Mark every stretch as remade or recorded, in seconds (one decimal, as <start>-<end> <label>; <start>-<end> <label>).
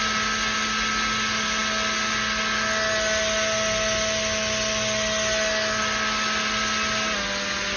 0.0-7.8 recorded